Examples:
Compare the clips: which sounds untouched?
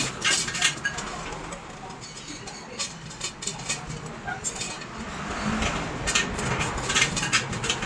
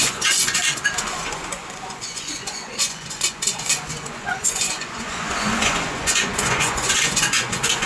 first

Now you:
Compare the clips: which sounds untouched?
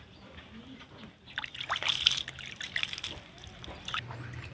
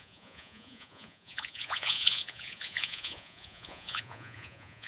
first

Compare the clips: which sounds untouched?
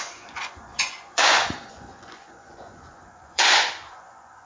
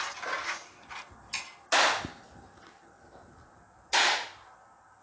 second